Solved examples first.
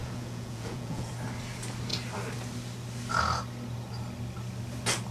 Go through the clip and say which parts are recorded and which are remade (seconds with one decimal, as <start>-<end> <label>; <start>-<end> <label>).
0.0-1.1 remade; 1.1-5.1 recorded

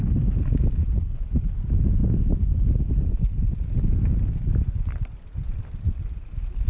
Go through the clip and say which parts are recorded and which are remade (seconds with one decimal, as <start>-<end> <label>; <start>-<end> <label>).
0.0-0.8 recorded; 0.8-1.5 remade; 1.5-6.7 recorded

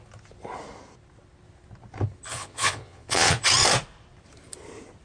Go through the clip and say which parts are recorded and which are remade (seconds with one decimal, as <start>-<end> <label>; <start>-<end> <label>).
0.0-2.3 recorded; 2.3-3.4 remade; 3.4-5.0 recorded

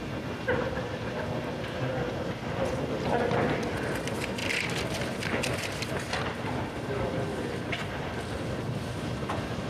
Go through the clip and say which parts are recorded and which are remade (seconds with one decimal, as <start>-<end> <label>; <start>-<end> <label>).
0.0-9.7 recorded

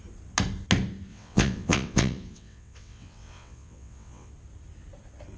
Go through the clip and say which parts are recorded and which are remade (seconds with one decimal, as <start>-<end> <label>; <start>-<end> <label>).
0.0-1.1 recorded; 1.1-4.3 remade; 4.3-5.4 recorded

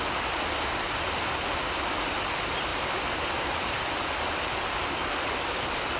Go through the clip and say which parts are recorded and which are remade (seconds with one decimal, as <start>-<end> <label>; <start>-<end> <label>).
0.0-2.7 recorded; 2.7-3.9 remade; 3.9-6.0 recorded